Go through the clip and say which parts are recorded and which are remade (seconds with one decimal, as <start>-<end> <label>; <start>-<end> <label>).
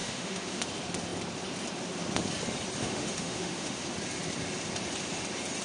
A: 0.0-0.6 remade; 0.6-2.8 recorded; 2.8-3.8 remade; 3.8-5.6 recorded